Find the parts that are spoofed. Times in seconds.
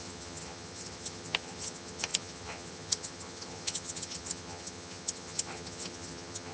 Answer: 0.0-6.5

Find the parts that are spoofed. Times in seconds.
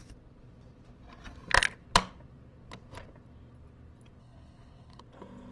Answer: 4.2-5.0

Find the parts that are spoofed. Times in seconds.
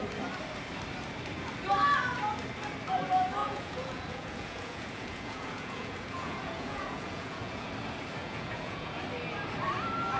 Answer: 3.4-7.7; 8.2-9.0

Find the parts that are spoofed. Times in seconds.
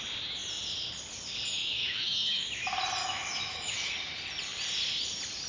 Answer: 1.6-2.5; 3.0-4.0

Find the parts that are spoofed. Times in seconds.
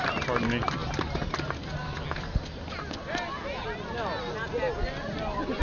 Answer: none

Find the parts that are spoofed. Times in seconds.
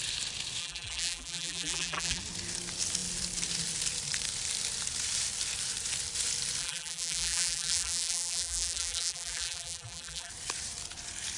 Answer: 0.6-2.2; 6.6-10.3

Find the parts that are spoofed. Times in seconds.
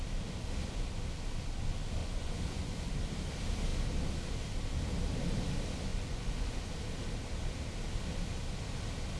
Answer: 2.0-2.9; 5.9-6.7